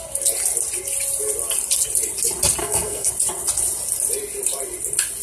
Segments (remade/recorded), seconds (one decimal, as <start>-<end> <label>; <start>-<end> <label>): 0.0-2.6 recorded; 2.6-3.1 remade; 3.1-5.2 recorded